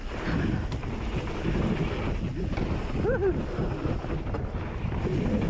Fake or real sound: real